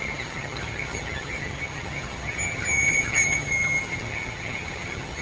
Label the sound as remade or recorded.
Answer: remade